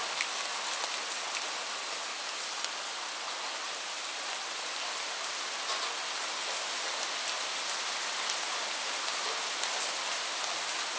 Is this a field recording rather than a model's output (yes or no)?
yes